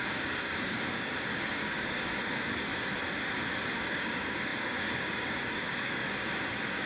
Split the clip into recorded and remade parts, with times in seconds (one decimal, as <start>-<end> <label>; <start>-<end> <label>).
0.0-2.7 remade; 2.7-3.9 recorded; 3.9-6.9 remade